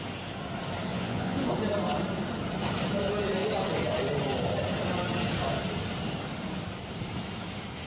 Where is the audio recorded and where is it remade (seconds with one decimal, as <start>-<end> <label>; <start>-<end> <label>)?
0.0-0.9 recorded; 0.9-1.5 remade; 1.5-7.9 recorded